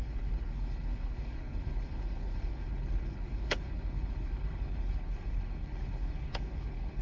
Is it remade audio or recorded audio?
remade